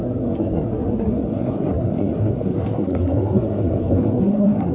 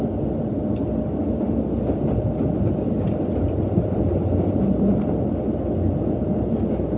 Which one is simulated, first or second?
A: first